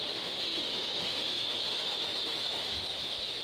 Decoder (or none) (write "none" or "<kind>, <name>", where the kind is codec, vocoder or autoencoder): autoencoder, DAC-VAE